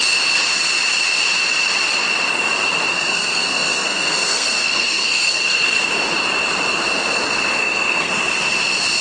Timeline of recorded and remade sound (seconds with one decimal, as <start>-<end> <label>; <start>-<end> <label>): 0.0-2.9 recorded; 2.9-5.8 remade; 5.8-7.6 recorded; 7.6-8.1 remade; 8.1-9.0 recorded